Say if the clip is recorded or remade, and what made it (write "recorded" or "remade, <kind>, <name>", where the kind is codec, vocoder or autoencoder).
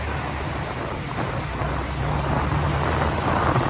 recorded